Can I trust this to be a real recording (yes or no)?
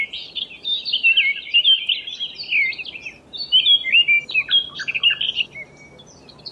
yes